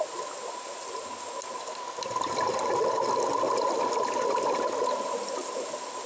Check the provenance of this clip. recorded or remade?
recorded